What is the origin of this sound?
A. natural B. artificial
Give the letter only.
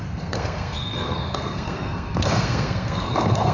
B